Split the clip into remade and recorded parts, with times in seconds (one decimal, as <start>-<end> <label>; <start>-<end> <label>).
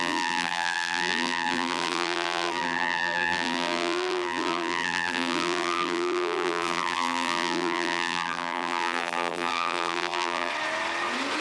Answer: 0.0-10.5 remade; 10.5-11.4 recorded